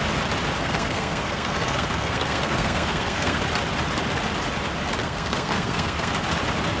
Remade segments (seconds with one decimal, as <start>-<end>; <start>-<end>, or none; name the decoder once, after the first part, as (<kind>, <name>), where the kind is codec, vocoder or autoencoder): 0.6-3.4 (codec, SNAC); 5.0-6.1